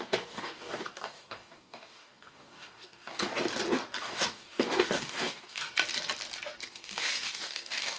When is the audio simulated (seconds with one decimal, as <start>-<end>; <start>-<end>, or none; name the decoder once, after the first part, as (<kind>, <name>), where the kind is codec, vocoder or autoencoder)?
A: 0.0-3.3 (codec, DAC); 4.0-5.7; 6.7-8.0